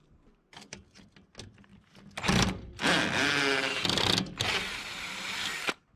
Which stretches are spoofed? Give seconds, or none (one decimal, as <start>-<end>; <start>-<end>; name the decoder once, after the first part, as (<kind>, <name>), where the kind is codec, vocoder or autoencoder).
none